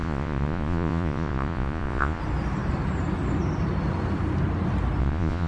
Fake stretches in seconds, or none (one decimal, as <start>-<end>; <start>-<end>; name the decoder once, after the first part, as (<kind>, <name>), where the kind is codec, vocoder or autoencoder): 0.0-2.2 (vocoder, Vocos); 5.0-5.5

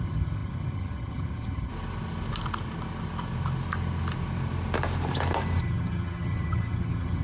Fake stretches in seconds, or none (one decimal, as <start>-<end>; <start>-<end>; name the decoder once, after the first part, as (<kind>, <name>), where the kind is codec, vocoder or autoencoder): 0.0-1.7 (vocoder, HiFi-GAN); 5.6-7.2

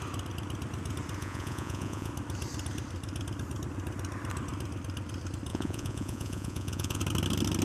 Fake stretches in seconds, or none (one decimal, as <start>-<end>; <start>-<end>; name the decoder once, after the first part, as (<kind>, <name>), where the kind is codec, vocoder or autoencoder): 1.2-2.1 (vocoder, Vocos); 5.5-7.0

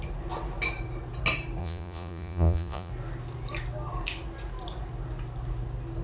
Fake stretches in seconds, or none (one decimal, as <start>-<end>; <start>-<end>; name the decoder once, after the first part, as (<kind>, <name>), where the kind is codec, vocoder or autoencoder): 1.6-2.9 (vocoder, Vocos)

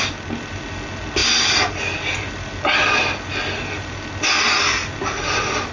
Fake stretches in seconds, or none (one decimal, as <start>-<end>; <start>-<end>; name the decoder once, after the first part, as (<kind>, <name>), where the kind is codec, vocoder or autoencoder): none

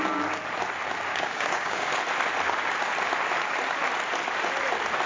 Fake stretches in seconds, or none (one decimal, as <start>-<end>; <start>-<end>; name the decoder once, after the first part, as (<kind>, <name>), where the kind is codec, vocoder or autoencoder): 1.1-1.9 (codec, DAC)